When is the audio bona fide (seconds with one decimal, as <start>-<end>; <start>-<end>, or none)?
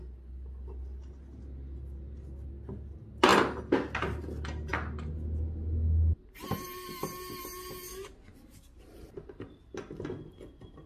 0.0-10.9